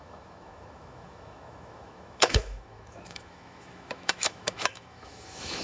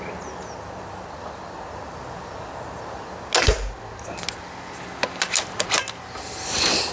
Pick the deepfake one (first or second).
first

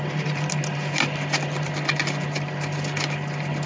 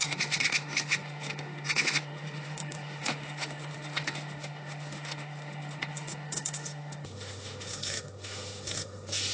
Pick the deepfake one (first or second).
second